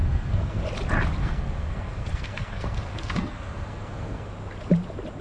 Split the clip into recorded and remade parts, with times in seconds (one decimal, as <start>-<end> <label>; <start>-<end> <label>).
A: 0.0-0.6 remade; 0.6-1.2 recorded; 1.2-4.3 remade; 4.3-5.2 recorded